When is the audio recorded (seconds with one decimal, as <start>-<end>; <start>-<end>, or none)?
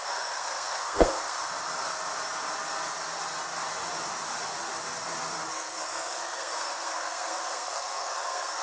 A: 1.5-5.5